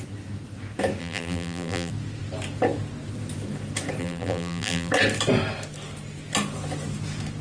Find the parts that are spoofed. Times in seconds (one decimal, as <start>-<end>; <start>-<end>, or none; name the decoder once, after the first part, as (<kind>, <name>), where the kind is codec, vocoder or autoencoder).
1.0-1.9 (vocoder, BigVGAN v2); 4.0-4.9